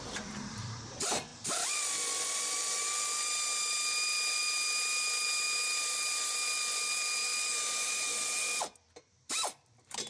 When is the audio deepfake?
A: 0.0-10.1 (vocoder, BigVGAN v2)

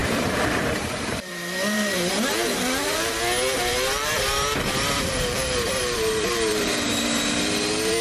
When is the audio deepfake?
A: 0.0-2.1 (vocoder, BigVGAN v2); 3.7-6.9

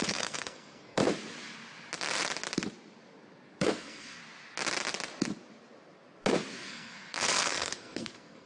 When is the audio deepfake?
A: 0.0-1.0 (codec, SNAC); 3.6-4.2; 6.5-8.5

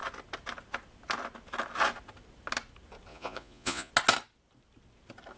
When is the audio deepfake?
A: 3.1-3.9 (vocoder, Vocos)

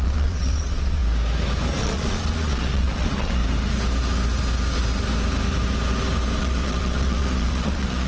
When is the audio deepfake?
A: 0.0-1.0 (vocoder, Vocos); 1.8-3.4; 6.4-8.1

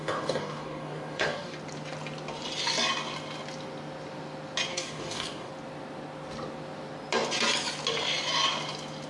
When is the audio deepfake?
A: 0.0-1.5 (codec, DAC); 4.7-5.5

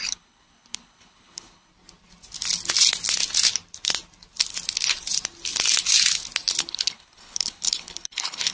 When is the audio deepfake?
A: 0.0-1.7 (codec, HILCodec); 6.6-8.5